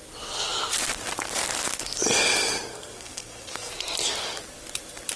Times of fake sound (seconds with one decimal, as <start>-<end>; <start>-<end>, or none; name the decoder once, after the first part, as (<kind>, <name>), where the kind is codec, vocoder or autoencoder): 2.7-3.7 (codec, SNAC)